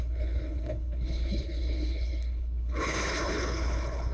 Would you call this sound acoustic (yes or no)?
no